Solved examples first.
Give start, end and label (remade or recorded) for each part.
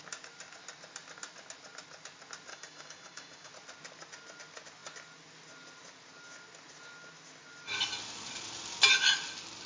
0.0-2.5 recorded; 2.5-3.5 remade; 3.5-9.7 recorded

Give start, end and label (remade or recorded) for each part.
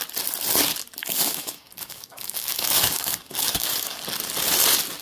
0.0-1.0 recorded; 1.0-4.0 remade; 4.0-5.0 recorded